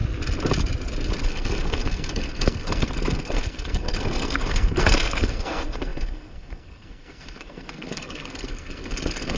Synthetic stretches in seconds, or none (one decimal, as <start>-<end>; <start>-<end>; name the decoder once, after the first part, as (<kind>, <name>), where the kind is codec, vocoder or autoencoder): 1.2-9.4 (codec, SNAC)